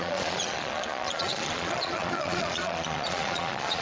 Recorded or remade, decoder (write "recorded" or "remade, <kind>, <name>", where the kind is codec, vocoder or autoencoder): remade, vocoder, Vocos